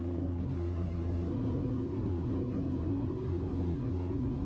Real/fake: fake